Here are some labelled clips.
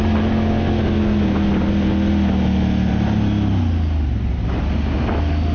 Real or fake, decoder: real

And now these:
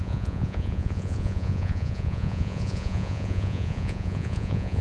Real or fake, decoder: fake, vocoder, Vocos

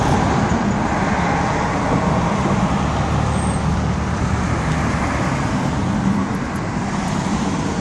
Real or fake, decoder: real